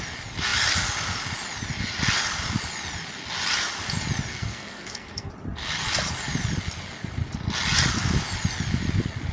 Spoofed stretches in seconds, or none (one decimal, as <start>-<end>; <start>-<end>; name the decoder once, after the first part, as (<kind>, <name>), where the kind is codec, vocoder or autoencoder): 4.3-5.3 (codec, SNAC)